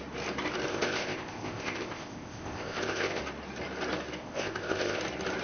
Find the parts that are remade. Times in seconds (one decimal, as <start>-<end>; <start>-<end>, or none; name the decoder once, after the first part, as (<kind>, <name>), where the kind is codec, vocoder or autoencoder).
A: 0.7-3.2 (codec, ZipCodec); 4.2-5.0